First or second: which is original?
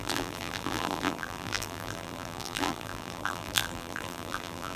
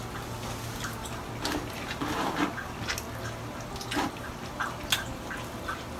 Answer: second